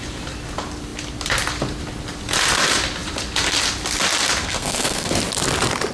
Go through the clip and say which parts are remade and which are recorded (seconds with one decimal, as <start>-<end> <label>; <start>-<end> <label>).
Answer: 0.0-4.4 recorded; 4.4-5.1 remade; 5.1-5.9 recorded